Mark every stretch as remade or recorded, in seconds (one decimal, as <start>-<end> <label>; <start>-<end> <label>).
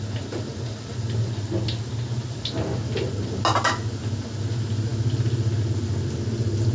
0.0-6.7 recorded